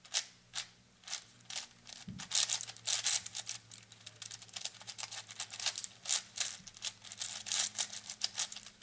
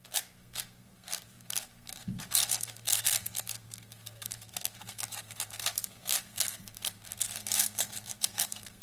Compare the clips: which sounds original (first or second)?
first